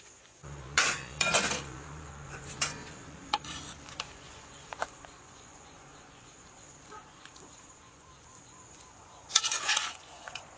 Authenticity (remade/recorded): remade